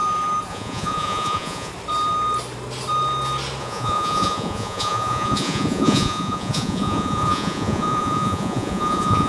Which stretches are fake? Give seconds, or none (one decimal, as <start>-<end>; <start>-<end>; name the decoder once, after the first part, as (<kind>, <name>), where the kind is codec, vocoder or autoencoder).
0.5-1.7 (vocoder, Vocos); 3.6-9.3